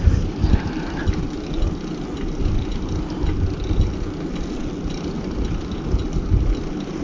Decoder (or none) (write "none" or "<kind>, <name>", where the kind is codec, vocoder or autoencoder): none